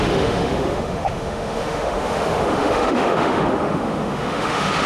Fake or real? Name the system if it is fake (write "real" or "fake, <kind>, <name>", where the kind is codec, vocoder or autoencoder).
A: fake, autoencoder, DAC-VAE